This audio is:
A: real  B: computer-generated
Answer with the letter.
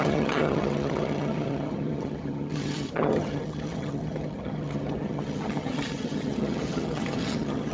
B